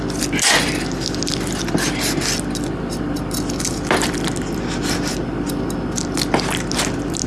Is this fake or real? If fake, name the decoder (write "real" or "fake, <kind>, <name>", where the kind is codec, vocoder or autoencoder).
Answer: real